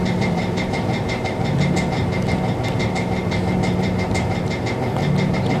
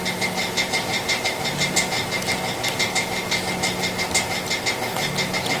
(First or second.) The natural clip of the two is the second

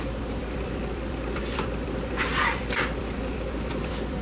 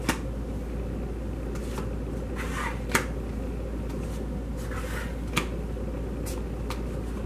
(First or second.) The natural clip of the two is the second